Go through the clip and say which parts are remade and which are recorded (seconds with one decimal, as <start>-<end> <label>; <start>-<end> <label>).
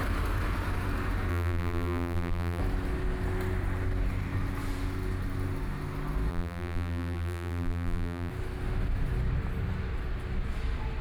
0.0-1.3 recorded; 1.3-2.6 remade; 2.6-6.3 recorded; 6.3-8.3 remade; 8.3-11.0 recorded